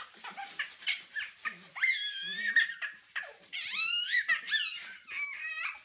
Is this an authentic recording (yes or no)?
no